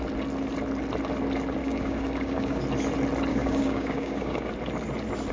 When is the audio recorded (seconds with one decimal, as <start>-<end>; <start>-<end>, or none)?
0.0-1.6; 2.6-3.3; 4.5-5.3